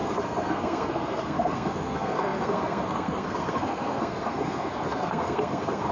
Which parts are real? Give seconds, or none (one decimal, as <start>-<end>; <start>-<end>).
none